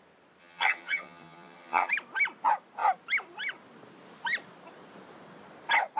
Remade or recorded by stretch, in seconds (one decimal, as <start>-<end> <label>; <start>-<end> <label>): 0.0-0.4 recorded; 0.4-1.9 remade; 1.9-6.0 recorded